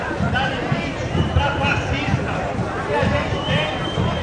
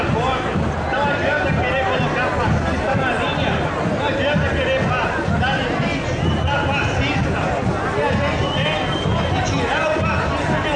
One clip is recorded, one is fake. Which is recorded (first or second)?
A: second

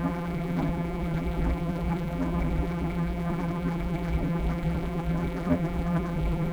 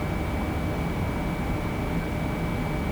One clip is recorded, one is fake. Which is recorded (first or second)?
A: second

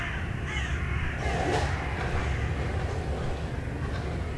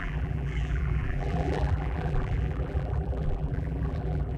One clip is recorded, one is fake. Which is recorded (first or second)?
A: first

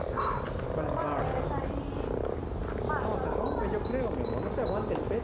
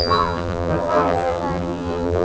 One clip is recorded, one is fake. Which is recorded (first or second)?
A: first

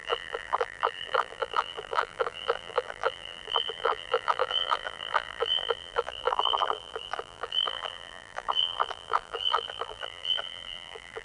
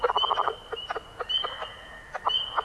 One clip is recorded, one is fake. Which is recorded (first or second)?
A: second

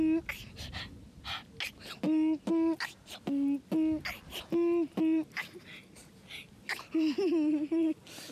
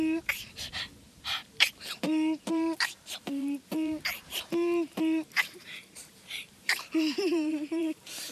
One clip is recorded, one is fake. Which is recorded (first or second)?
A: first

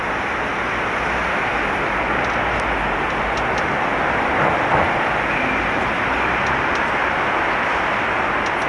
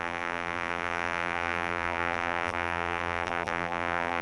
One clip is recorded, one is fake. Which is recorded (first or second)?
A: first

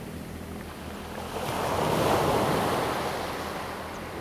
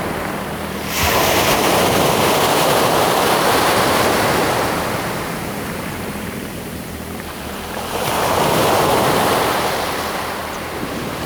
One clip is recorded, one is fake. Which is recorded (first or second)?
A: first